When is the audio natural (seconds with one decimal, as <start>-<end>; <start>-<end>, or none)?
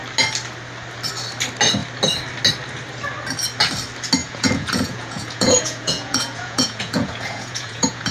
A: 0.0-4.2